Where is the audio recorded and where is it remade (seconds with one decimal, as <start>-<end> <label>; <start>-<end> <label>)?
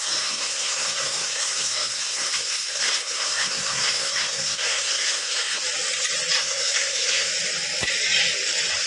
0.0-5.6 remade; 5.6-6.4 recorded; 6.4-7.3 remade; 7.3-8.9 recorded